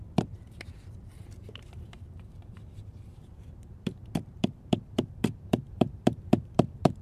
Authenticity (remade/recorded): remade